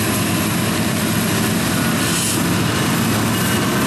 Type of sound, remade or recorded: recorded